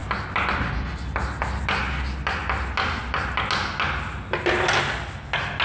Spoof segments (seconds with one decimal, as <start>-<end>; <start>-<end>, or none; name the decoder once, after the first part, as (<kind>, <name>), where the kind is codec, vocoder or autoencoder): none